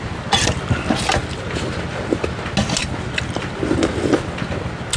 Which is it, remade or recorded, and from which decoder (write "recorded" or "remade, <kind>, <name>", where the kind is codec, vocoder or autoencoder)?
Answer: recorded